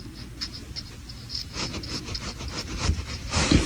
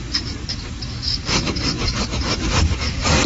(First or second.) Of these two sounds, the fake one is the second